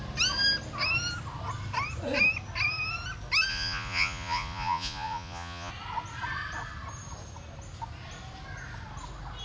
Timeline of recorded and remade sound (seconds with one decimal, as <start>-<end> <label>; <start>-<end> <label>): 0.0-3.5 recorded; 3.5-5.7 remade; 5.7-9.4 recorded